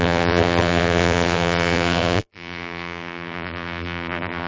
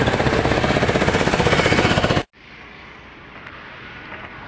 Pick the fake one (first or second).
first